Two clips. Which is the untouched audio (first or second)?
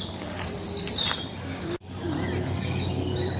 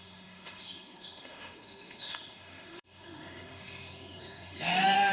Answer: first